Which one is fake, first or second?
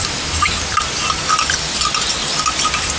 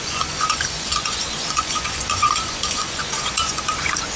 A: second